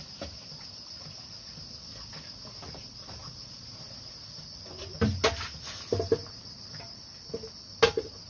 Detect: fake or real real